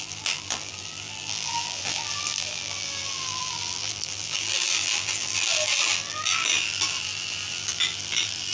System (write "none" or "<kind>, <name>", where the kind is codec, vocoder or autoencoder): vocoder, BigVGAN v2